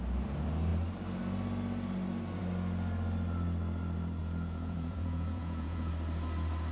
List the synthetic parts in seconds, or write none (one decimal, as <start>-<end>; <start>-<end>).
4.2-5.9